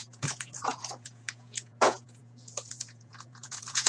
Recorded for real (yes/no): no